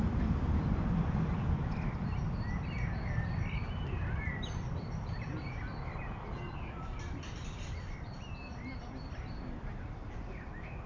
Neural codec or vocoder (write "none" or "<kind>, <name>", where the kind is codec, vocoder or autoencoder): vocoder, BigVGAN v2